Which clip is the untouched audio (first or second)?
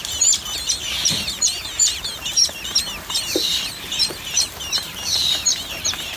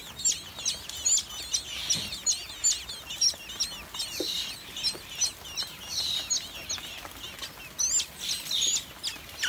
second